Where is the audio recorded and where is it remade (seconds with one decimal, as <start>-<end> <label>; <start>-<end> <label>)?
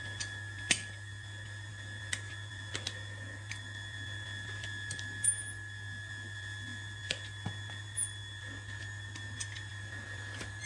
0.0-10.7 recorded